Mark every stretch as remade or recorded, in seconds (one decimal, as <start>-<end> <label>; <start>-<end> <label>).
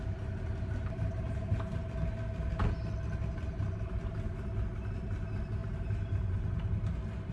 0.0-5.6 recorded; 5.6-6.7 remade; 6.7-7.3 recorded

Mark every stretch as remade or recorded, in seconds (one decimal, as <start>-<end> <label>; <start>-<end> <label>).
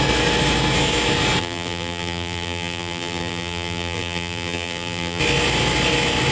0.0-1.4 recorded; 1.4-5.2 remade; 5.2-6.3 recorded